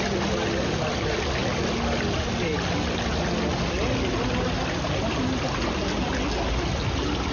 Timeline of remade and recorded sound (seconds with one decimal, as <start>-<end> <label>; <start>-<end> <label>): 0.0-7.3 recorded